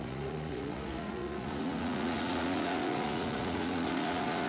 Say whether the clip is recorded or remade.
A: remade